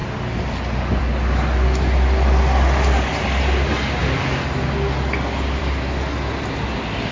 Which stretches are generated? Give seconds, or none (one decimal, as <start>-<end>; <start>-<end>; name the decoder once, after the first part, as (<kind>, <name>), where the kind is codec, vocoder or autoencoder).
none